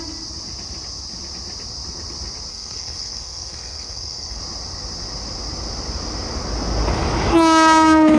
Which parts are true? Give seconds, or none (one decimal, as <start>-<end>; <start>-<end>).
0.0-2.5; 4.4-8.2